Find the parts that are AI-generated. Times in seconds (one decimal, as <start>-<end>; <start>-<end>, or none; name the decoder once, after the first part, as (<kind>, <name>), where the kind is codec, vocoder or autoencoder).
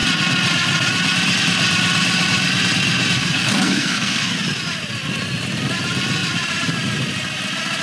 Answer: 3.2-4.3 (codec, SNAC)